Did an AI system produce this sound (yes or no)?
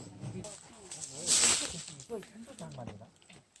no